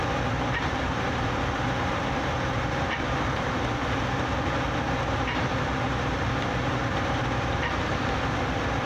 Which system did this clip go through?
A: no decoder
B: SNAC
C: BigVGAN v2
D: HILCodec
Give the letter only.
C